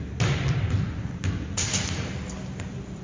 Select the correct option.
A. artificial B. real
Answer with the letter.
B